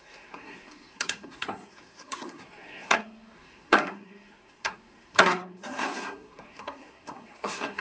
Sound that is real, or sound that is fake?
fake